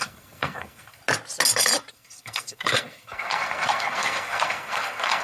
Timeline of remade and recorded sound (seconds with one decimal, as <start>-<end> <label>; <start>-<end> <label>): 0.0-1.0 remade; 1.0-1.9 recorded; 1.9-5.2 remade